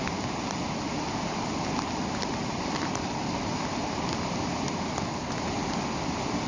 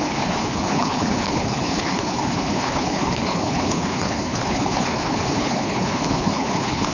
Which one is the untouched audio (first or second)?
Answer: first